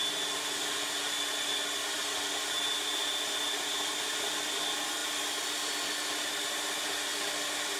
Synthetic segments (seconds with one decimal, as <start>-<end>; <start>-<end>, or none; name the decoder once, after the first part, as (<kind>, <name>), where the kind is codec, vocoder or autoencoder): none